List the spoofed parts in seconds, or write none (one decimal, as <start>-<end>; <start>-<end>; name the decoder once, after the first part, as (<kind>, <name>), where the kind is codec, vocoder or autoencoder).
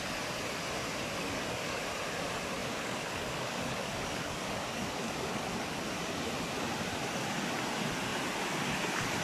1.2-1.8 (codec, DAC); 2.6-5.4